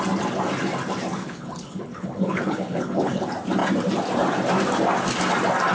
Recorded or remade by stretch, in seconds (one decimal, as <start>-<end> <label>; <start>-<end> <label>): 0.0-1.2 recorded; 1.2-3.2 remade; 3.2-5.7 recorded